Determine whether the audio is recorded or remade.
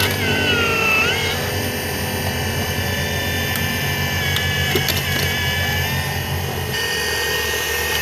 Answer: recorded